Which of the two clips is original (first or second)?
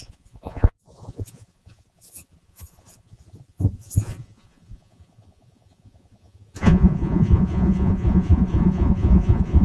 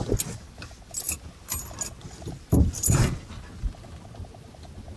second